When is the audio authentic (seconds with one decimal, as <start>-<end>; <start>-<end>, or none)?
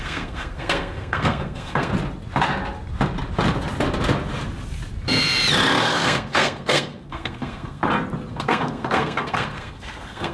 1.9-5.8; 7.8-8.3